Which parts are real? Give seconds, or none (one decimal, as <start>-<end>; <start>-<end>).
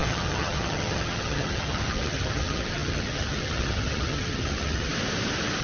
4.9-5.6